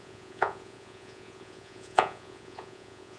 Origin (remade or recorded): remade